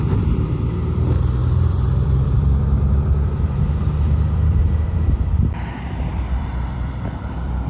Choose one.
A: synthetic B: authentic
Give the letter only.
A